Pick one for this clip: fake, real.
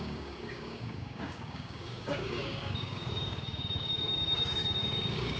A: fake